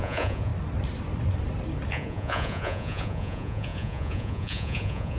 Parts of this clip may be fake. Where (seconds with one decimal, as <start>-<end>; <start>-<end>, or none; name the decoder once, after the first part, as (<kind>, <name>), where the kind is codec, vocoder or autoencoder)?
0.0-0.5 (vocoder, Vocos); 1.9-5.2